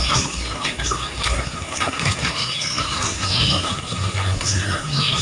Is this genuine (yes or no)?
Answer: no